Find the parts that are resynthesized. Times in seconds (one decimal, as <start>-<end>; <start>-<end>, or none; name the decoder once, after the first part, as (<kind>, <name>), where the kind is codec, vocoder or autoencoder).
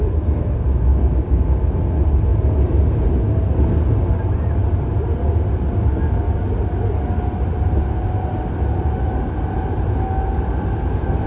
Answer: 0.9-1.4 (codec, DAC)